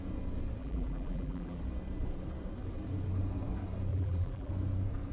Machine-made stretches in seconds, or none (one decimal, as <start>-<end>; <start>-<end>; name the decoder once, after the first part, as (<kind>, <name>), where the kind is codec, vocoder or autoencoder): 0.6-1.6 (vocoder, BigVGAN v2); 3.9-4.5